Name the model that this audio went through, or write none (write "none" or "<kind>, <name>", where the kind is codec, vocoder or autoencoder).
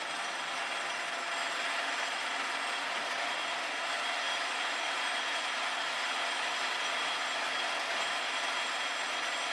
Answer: none